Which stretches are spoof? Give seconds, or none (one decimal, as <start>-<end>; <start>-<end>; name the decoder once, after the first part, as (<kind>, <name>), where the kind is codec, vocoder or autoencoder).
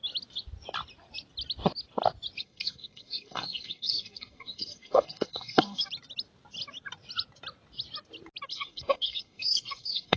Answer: 2.4-5.9 (codec, SNAC); 8.5-10.2